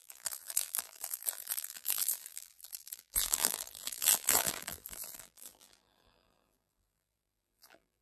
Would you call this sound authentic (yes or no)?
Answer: no